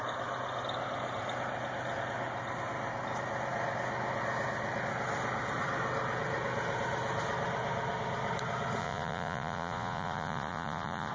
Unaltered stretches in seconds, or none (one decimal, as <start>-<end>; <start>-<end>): 0.0-8.8